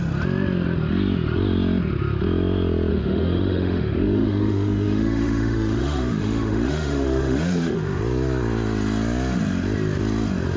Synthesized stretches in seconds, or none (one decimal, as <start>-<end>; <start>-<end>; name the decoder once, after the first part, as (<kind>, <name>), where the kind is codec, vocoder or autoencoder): 2.9-8.0 (autoencoder, DAC-VAE)